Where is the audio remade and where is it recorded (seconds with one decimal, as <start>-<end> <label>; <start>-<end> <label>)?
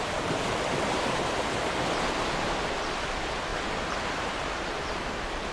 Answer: 0.0-5.5 remade